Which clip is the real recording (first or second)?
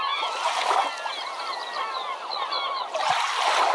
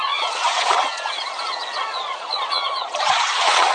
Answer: first